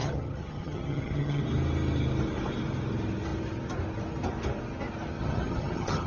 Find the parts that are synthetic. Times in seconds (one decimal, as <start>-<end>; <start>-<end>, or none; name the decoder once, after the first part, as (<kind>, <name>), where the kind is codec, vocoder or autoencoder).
0.0-1.4 (vocoder, HiFi-GAN); 5.2-6.1